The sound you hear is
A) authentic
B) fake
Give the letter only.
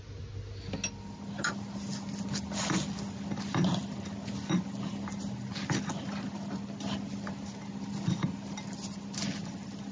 A